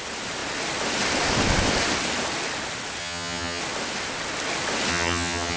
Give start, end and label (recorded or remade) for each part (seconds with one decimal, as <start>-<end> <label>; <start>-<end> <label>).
0.0-3.0 recorded; 3.0-3.6 remade; 3.6-4.9 recorded; 4.9-5.6 remade